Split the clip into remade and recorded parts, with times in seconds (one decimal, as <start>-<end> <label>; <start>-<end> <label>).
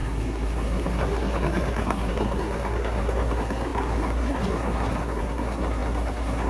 0.0-6.5 remade